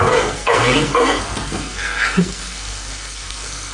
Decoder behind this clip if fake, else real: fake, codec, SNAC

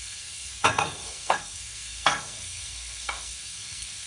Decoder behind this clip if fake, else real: fake, codec, SNAC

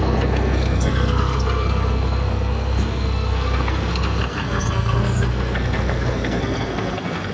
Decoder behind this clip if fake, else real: fake, codec, SNAC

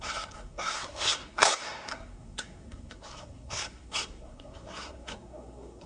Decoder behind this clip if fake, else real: fake, codec, SNAC